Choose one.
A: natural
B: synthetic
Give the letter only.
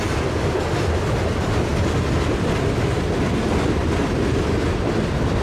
A